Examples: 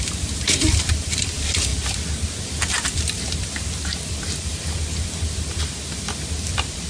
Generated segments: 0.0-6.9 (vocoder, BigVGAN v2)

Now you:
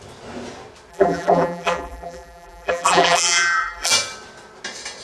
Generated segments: 0.9-3.9 (vocoder, BigVGAN v2)